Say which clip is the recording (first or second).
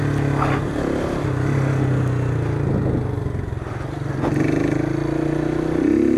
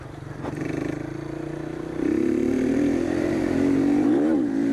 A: first